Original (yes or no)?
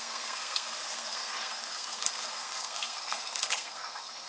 no